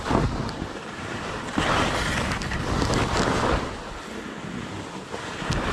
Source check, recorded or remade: recorded